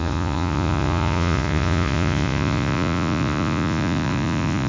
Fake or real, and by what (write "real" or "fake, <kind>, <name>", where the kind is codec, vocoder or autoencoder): fake, vocoder, Vocos